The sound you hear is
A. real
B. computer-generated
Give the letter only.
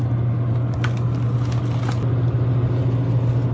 A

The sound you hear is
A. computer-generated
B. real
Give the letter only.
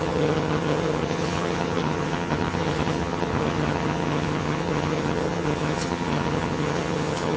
A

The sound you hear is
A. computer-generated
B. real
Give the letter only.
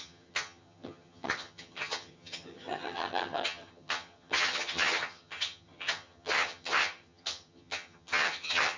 A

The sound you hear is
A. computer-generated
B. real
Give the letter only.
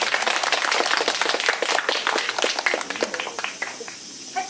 B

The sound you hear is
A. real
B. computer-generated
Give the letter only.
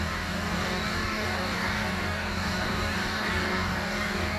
B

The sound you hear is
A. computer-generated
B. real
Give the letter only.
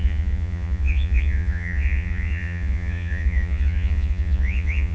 A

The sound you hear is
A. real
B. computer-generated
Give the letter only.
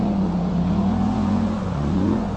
B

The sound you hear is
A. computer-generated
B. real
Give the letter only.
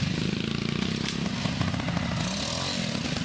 B